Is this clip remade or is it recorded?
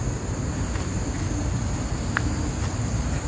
recorded